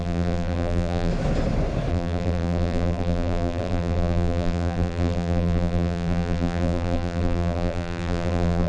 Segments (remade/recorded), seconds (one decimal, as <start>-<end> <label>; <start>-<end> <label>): 0.0-1.1 remade; 1.1-1.9 recorded; 1.9-8.7 remade